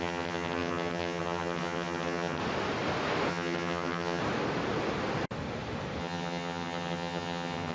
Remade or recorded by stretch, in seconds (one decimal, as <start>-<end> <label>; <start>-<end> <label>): 0.0-2.4 remade; 2.4-3.3 recorded; 3.3-4.2 remade; 4.2-6.0 recorded; 6.0-7.7 remade